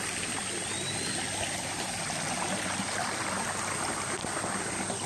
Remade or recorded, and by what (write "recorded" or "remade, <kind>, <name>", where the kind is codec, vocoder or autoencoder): remade, vocoder, BigVGAN v2